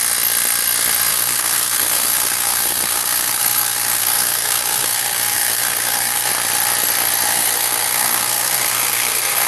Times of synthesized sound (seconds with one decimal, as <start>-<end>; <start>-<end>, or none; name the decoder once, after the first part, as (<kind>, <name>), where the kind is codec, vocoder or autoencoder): 1.1-6.3 (codec, SNAC); 7.3-9.5